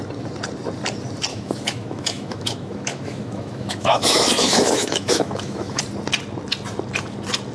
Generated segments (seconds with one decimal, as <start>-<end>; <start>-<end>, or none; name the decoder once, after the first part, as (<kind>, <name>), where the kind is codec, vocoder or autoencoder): 1.3-5.8 (autoencoder, DAC-VAE)